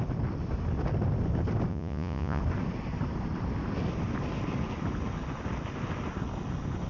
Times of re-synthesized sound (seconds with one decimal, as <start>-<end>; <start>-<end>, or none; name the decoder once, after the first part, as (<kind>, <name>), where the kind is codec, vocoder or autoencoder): 1.7-2.4 (vocoder, Vocos)